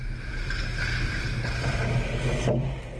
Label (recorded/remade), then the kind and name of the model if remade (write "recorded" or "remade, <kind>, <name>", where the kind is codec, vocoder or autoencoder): recorded